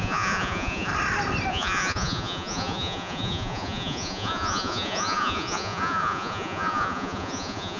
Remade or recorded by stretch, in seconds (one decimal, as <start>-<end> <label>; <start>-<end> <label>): 0.0-0.9 remade; 0.9-1.5 recorded; 1.5-7.8 remade